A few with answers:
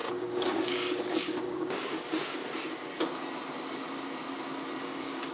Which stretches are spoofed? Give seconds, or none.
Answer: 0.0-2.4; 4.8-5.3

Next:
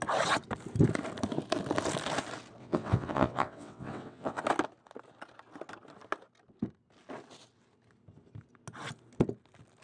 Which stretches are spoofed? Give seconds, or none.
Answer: 2.6-4.4

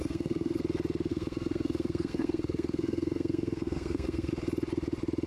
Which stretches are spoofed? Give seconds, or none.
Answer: 0.0-0.6; 1.1-4.3

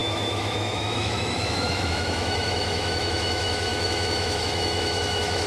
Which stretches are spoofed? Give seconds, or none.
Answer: 0.0-5.5